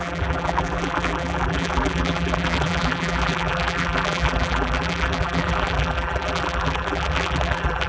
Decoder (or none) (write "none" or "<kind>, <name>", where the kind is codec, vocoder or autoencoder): vocoder, BigVGAN v2